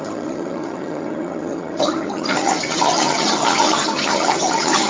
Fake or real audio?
fake